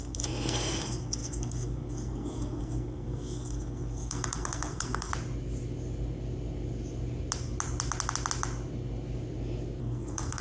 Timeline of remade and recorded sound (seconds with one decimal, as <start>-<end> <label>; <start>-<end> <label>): 0.0-5.1 remade; 5.1-9.8 recorded; 9.8-10.4 remade